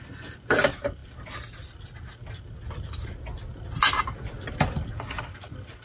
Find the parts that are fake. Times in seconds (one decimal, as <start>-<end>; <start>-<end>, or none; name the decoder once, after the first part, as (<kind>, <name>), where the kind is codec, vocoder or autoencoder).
none